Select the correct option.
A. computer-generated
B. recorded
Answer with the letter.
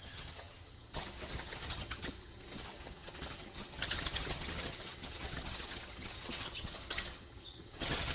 A